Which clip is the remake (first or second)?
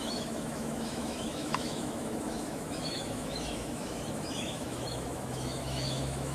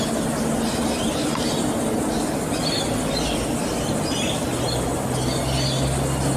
first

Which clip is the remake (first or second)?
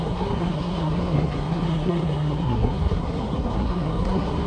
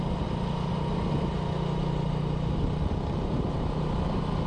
first